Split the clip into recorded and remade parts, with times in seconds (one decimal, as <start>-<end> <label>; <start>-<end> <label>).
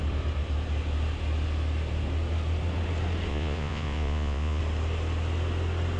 0.0-3.3 recorded; 3.3-4.6 remade; 4.6-6.0 recorded